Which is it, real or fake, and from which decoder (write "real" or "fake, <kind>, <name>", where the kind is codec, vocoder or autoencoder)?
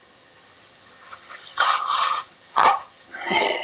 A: fake, vocoder, HiFi-GAN